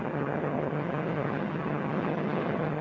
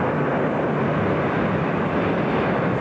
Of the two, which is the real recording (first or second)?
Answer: second